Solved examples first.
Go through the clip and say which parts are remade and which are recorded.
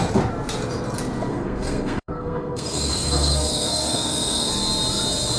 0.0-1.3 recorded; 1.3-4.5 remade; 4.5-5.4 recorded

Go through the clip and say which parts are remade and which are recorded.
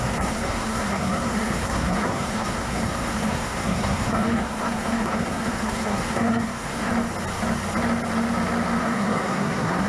0.0-6.9 remade; 6.9-8.8 recorded; 8.8-9.9 remade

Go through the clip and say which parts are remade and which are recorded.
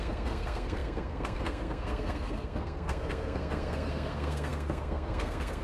0.0-5.6 remade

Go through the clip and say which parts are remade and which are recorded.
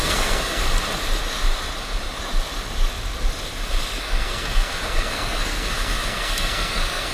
0.0-0.6 remade; 0.6-4.0 recorded; 4.0-7.1 remade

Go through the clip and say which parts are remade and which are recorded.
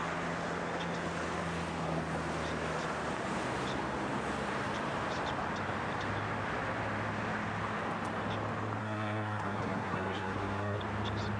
0.0-8.8 recorded; 8.8-10.8 remade; 10.8-11.4 recorded